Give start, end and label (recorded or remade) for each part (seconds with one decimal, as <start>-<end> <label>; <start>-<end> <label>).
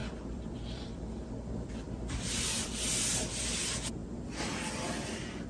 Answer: 0.0-3.3 remade; 3.3-4.0 recorded; 4.0-4.7 remade; 4.7-5.5 recorded